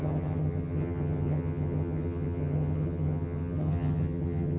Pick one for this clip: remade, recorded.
remade